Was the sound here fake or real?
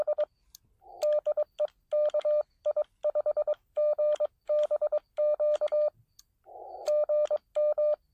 real